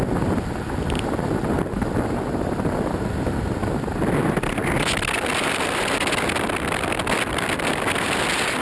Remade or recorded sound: recorded